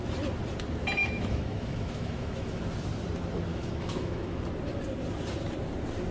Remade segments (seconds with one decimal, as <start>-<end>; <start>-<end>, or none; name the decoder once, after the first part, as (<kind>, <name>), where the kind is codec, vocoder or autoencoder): 1.0-2.6 (autoencoder, DAC-VAE); 3.5-4.4